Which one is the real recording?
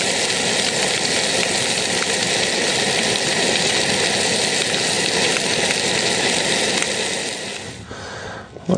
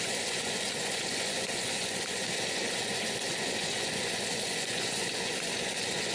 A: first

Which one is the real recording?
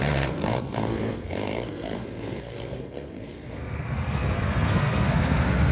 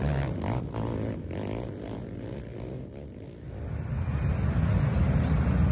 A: second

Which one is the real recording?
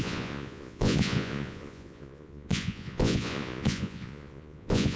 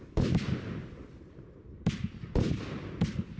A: second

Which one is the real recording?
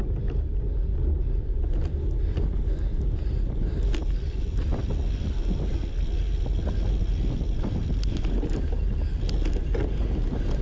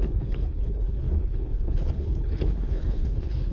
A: first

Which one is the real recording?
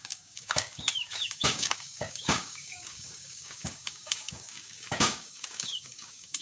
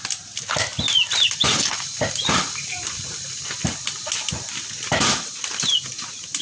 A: second